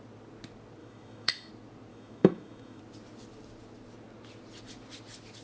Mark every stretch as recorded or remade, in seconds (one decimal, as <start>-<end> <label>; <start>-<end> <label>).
0.0-0.8 recorded; 0.8-1.5 remade; 1.5-1.9 recorded; 1.9-2.8 remade; 2.8-5.4 recorded